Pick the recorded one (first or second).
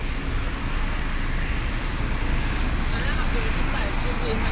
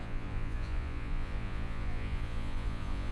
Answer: first